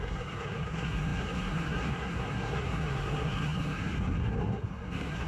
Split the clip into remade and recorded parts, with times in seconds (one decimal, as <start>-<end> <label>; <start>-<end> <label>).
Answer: 0.0-5.3 remade